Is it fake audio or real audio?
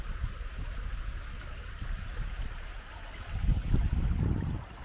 real